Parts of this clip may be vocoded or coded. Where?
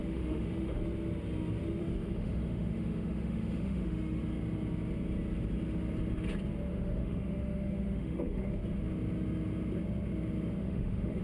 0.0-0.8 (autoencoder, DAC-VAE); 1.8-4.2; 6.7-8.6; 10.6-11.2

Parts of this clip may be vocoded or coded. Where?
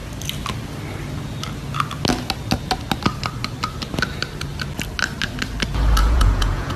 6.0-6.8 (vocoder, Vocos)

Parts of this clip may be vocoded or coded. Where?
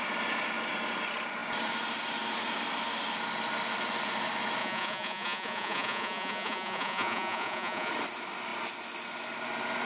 4.6-7.9 (vocoder, Vocos)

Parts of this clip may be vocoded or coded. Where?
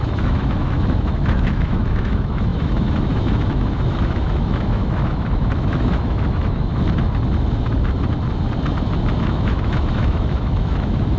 0.0-6.7 (autoencoder, DAC-VAE); 9.2-11.2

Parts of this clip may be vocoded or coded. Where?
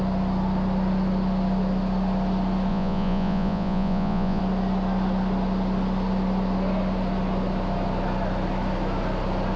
2.7-4.4 (vocoder, Vocos)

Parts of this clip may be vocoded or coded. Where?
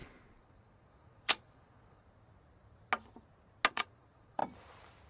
0.0-2.0 (vocoder, Vocos); 3.7-4.4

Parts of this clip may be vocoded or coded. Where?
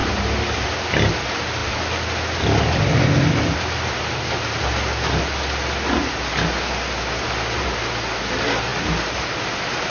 none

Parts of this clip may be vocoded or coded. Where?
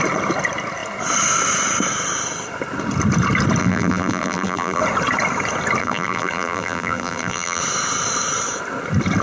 3.6-4.8 (vocoder, BigVGAN v2); 5.8-7.6